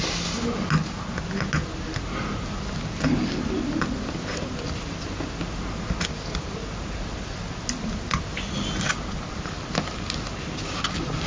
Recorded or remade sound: recorded